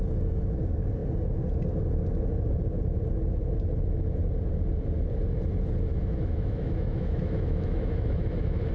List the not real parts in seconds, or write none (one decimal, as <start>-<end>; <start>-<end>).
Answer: 5.9-8.7